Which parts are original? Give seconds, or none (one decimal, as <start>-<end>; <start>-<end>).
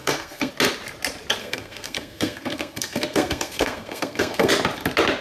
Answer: 0.5-1.4; 4.5-5.2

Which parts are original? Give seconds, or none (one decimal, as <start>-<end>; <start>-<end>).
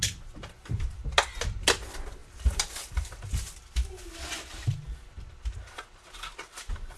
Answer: 0.0-7.0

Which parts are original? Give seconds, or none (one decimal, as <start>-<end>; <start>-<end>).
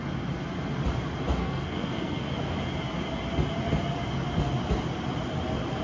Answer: 0.0-1.4; 2.3-5.8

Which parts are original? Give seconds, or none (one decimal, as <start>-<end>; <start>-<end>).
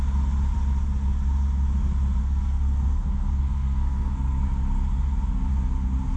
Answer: 0.0-2.2; 4.4-6.2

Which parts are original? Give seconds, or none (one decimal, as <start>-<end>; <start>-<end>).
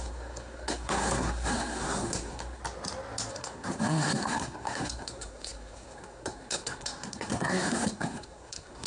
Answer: 2.6-3.3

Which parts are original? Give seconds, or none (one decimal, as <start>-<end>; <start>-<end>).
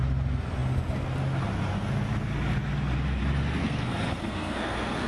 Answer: 0.0-3.6